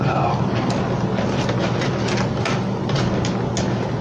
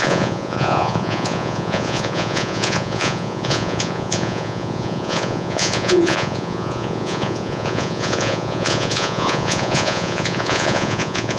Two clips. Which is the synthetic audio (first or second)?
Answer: second